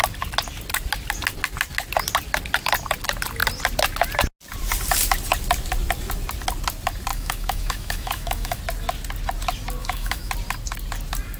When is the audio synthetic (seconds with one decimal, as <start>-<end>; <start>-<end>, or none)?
7.1-8.6; 9.8-10.3